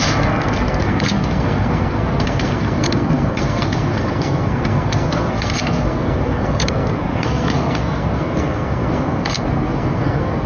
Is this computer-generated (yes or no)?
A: yes